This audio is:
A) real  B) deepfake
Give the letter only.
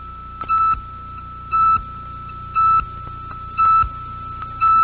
A